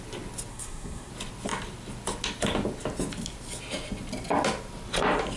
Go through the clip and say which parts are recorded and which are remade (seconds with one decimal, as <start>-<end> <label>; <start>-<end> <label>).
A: 0.0-0.5 recorded; 0.5-1.1 remade; 1.1-5.4 recorded